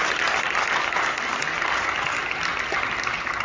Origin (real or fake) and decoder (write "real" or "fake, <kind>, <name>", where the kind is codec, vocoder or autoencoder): real